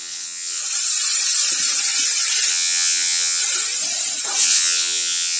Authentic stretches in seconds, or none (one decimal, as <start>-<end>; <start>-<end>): 0.6-2.5; 3.4-4.4